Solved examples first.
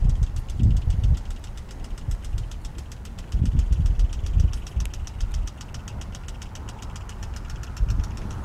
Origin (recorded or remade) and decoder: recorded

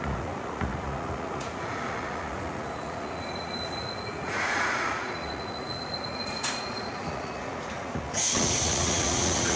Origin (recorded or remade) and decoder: remade, vocoder, Vocos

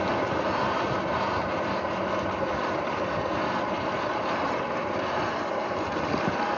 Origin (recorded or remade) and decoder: recorded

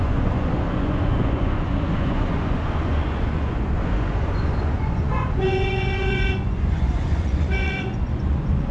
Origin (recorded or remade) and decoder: remade, vocoder, Vocos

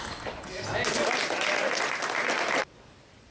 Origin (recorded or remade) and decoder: recorded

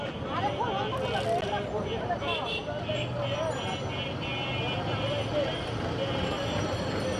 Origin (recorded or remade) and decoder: recorded